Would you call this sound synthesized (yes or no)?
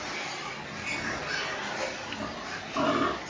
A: no